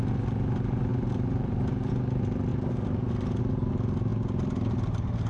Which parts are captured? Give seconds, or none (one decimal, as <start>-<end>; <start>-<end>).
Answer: 0.0-0.9; 1.9-2.5; 3.4-5.3